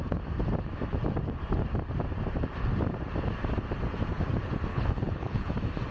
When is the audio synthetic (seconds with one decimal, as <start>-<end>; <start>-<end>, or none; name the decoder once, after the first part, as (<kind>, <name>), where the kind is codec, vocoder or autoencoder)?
4.7-5.5 (codec, HILCodec)